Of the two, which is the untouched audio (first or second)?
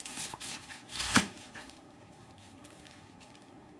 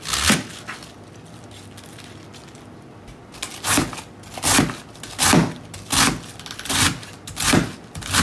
second